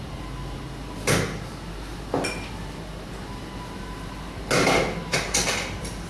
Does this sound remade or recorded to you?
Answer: recorded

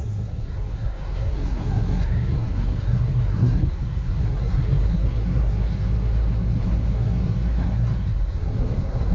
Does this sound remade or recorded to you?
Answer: remade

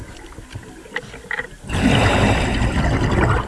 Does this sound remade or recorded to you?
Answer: recorded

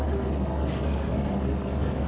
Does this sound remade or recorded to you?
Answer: remade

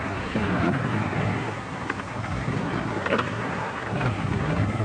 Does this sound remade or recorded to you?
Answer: remade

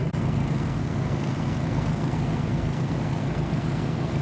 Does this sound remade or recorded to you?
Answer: remade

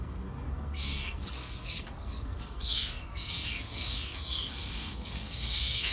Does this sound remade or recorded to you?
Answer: remade